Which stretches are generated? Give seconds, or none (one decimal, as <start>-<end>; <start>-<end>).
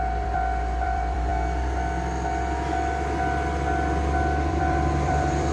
0.0-1.3; 4.5-5.5